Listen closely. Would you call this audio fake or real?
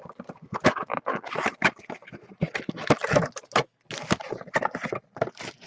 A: real